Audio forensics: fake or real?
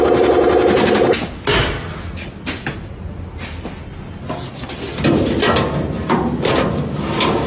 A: real